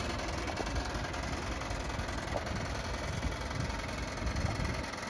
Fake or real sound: real